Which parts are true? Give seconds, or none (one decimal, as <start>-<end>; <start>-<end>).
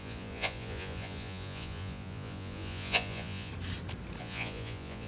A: 3.5-4.2